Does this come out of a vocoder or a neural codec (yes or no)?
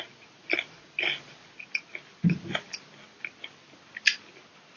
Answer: no